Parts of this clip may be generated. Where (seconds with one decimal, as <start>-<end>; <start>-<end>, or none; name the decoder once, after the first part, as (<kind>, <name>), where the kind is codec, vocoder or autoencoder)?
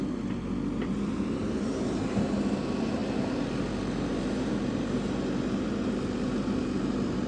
none